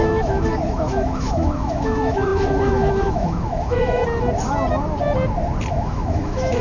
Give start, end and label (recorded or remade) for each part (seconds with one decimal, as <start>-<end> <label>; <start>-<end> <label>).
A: 0.0-4.0 remade; 4.0-5.7 recorded; 5.7-6.6 remade